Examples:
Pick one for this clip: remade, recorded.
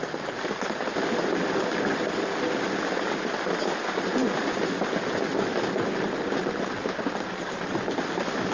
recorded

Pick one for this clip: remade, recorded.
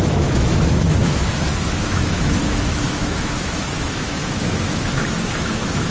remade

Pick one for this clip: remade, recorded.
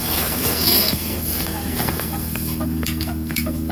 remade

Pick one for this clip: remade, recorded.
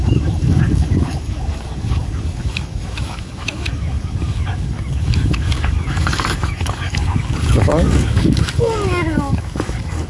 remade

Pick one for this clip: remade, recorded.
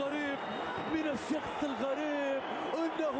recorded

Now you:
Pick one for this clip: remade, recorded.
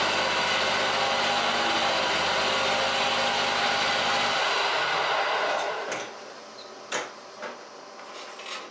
recorded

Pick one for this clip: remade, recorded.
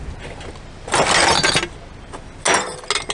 recorded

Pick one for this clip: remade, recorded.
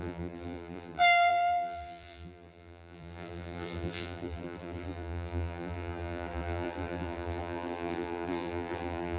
remade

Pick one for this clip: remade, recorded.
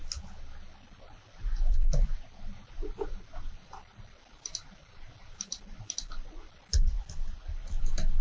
recorded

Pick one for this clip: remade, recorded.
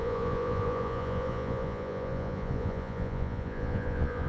remade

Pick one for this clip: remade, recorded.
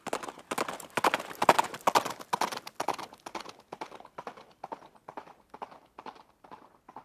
recorded